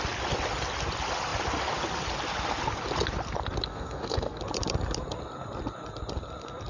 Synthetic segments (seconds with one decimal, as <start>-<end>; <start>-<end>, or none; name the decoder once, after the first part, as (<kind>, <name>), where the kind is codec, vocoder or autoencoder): 3.7-4.4 (codec, SNAC)